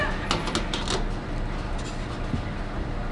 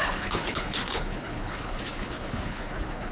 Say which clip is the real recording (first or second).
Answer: first